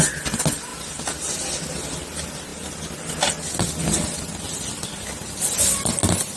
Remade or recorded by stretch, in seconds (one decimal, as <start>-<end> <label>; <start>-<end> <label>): 0.0-6.4 recorded